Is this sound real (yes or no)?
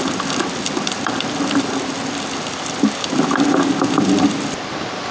yes